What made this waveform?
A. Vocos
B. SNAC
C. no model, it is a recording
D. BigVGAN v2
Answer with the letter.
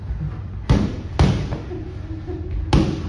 C